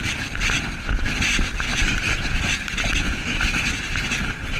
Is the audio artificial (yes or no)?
no